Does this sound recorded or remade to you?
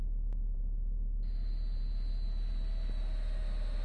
recorded